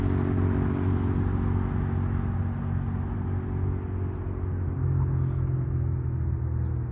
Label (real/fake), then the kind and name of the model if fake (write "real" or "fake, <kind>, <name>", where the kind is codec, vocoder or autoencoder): real